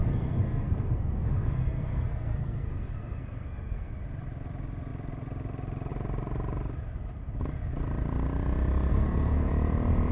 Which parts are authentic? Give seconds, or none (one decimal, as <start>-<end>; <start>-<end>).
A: 3.9-8.9; 9.5-10.1